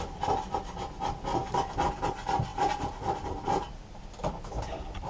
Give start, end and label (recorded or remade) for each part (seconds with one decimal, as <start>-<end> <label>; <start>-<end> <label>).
0.0-5.1 recorded